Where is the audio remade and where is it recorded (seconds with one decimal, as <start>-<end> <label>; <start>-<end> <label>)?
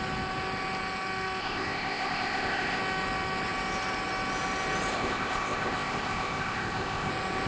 0.0-1.4 recorded; 1.4-2.8 remade; 2.8-4.9 recorded; 4.9-7.1 remade; 7.1-7.5 recorded